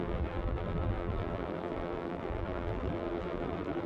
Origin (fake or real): fake